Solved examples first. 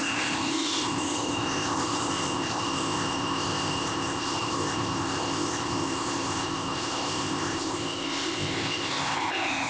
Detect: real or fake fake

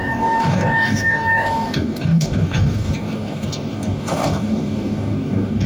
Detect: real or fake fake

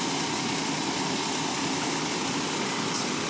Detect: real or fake real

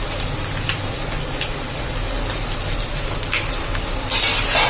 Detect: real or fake real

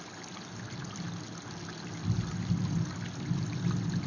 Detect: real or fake real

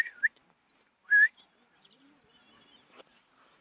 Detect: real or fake fake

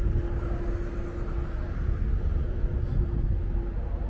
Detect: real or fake real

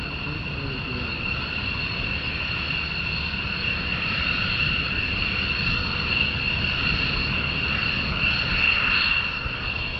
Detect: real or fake real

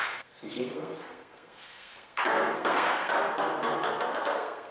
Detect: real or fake fake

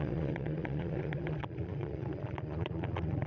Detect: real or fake fake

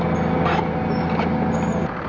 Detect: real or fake real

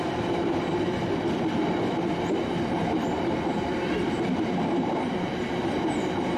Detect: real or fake real